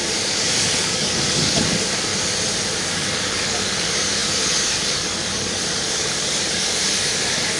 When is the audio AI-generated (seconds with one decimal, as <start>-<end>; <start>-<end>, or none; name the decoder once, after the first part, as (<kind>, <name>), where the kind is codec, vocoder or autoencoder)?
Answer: 0.0-2.1 (codec, DAC); 2.8-7.6